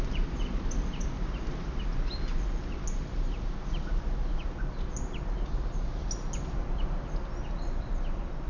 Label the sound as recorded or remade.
recorded